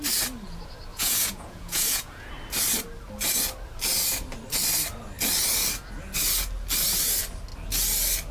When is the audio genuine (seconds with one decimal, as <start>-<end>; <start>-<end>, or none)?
0.0-0.9; 2.3-8.3